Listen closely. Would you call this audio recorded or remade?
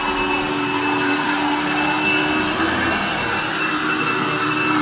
recorded